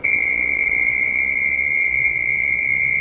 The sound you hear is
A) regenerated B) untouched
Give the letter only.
A